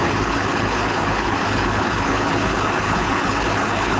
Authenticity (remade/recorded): remade